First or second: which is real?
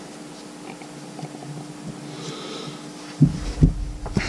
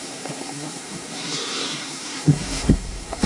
first